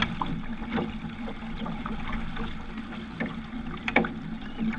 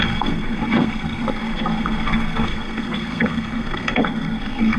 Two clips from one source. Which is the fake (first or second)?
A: second